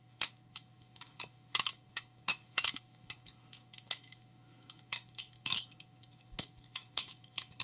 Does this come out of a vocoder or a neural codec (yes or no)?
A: yes